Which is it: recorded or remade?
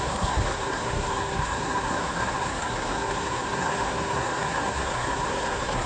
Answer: remade